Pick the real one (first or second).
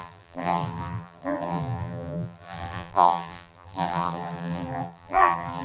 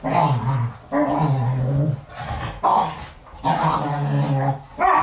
second